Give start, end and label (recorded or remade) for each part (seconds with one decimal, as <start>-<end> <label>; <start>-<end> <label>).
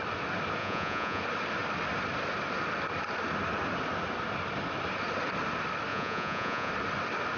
0.0-0.6 recorded; 0.6-1.2 remade; 1.2-5.9 recorded; 5.9-6.7 remade; 6.7-7.4 recorded